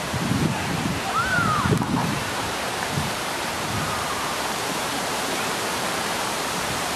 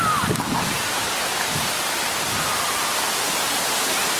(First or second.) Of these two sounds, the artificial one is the first